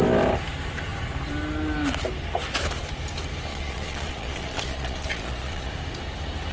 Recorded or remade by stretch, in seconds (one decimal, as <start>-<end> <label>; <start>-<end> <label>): 0.0-3.5 recorded; 3.5-5.7 remade; 5.7-6.5 recorded